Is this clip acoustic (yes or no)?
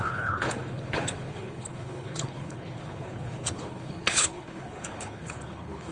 no